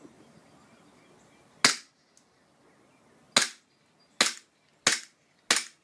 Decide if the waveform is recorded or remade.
recorded